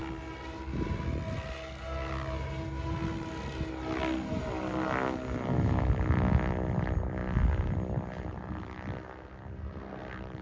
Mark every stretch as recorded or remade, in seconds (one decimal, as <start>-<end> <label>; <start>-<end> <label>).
0.0-10.4 recorded